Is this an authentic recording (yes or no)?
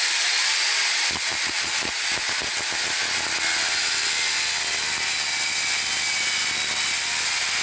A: yes